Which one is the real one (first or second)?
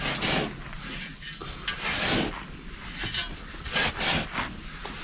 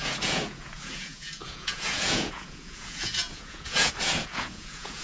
first